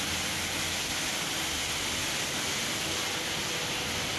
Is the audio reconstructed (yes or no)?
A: no